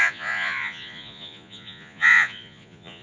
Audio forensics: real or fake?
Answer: fake